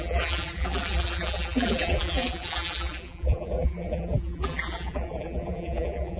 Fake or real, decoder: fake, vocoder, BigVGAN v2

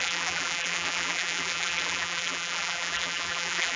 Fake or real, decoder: fake, vocoder, BigVGAN v2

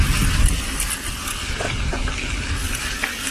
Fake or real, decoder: real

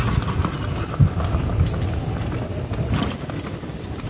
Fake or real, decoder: real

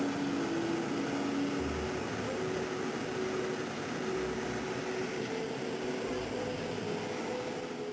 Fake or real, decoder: real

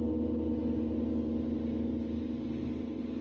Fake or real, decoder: real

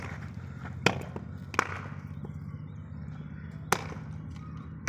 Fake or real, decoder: real